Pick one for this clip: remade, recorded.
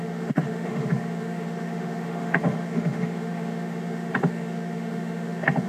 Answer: remade